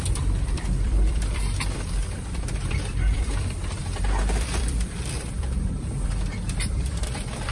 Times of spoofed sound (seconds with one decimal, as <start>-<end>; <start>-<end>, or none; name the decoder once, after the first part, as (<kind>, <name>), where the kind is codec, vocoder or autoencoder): 0.0-7.5 (vocoder, BigVGAN v2)